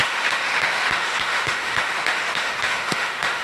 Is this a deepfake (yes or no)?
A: yes